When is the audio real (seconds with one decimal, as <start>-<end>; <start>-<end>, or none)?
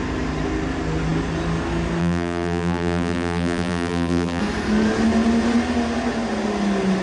0.0-2.0; 4.4-7.0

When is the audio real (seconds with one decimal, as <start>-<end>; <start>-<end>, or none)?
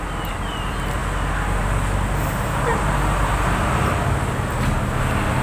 0.0-5.4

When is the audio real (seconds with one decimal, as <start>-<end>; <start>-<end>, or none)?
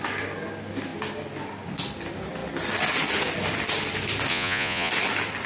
0.0-4.3; 4.9-5.5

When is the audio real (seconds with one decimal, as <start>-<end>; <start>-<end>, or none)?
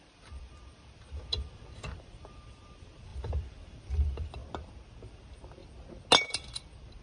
4.4-5.1; 5.6-6.3